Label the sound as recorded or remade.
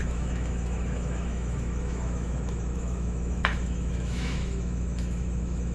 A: remade